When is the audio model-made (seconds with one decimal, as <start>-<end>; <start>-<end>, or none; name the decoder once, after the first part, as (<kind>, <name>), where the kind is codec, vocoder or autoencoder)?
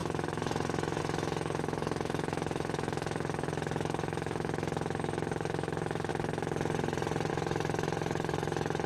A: 0.0-6.1 (autoencoder, DAC-VAE); 7.3-8.9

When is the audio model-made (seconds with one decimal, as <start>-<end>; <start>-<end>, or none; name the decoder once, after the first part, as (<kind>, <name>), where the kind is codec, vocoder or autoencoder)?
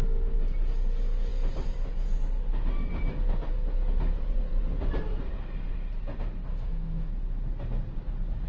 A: 6.5-7.1 (autoencoder, DAC-VAE)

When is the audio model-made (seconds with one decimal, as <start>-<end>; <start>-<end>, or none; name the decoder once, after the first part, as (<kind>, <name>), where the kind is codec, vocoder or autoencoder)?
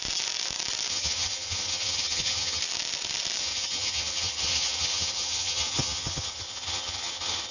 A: 0.9-2.6 (vocoder, HiFi-GAN); 3.4-7.5